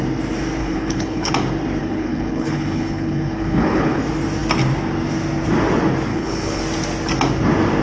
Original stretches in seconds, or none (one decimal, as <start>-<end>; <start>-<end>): 0.0-0.6; 1.3-1.8; 4.0-6.1; 6.6-7.8